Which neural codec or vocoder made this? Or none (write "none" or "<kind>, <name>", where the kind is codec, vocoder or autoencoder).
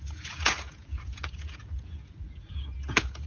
vocoder, Vocos